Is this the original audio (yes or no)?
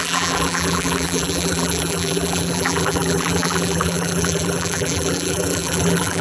no